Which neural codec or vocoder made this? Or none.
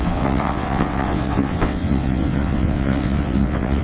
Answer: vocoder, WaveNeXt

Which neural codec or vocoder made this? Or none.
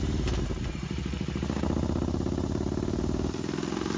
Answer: none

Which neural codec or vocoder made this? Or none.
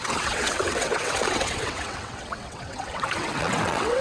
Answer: vocoder, WaveNeXt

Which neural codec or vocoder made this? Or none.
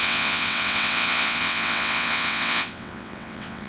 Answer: vocoder, WaveNeXt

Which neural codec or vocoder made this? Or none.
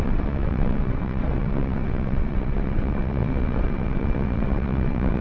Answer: vocoder, WaveNeXt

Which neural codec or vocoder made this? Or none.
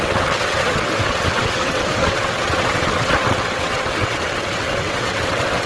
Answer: vocoder, WaveNeXt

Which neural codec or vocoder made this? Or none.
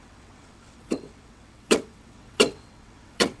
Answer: vocoder, WaveNeXt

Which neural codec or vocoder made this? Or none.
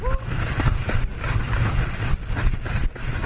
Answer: none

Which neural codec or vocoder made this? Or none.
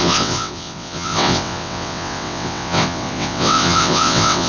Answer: vocoder, WaveNeXt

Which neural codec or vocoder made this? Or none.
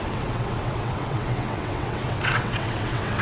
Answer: vocoder, WaveNeXt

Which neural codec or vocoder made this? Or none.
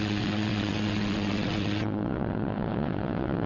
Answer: vocoder, WaveNeXt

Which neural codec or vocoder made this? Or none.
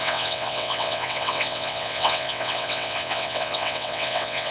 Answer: vocoder, WaveNeXt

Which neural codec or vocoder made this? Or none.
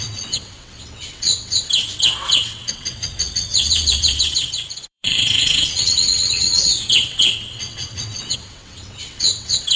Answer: vocoder, WaveNeXt